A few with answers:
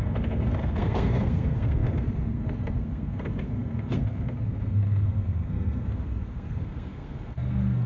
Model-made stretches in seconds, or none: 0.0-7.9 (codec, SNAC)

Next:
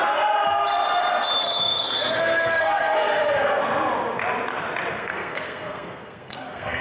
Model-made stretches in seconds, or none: 1.4-3.6 (codec, SNAC); 5.0-6.8

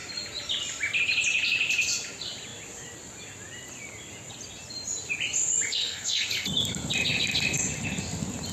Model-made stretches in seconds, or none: 5.7-6.3 (codec, SNAC)

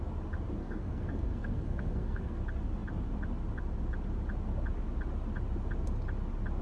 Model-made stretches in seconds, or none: 0.6-2.4 (codec, SNAC)

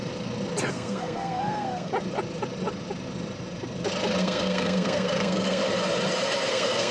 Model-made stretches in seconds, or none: 0.7-1.9 (codec, SNAC); 4.2-5.6; 6.5-6.9

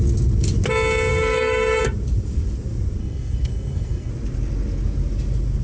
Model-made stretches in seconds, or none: 1.1-1.8 (codec, SNAC); 3.0-4.1